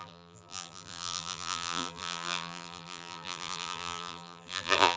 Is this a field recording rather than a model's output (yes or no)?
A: no